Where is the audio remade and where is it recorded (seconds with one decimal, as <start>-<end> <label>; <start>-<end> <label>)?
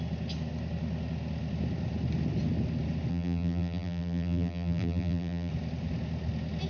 0.0-3.1 recorded; 3.1-5.5 remade; 5.5-6.7 recorded